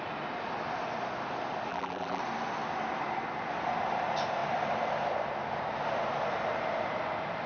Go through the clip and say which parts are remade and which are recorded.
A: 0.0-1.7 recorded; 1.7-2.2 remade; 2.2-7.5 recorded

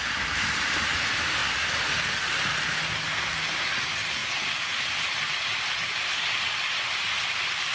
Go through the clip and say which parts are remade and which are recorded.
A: 0.0-7.7 recorded

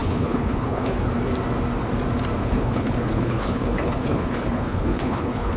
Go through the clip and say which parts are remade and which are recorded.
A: 0.0-1.1 remade; 1.1-2.4 recorded; 2.4-5.6 remade

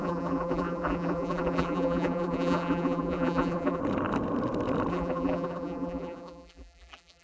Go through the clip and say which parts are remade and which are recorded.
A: 0.0-3.8 remade; 3.8-4.9 recorded; 4.9-7.2 remade

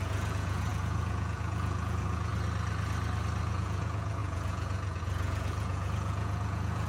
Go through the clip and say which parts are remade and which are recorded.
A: 0.0-2.3 remade; 2.3-3.4 recorded; 3.4-6.9 remade

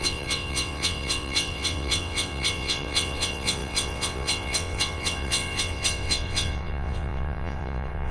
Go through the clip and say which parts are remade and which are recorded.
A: 0.0-8.1 remade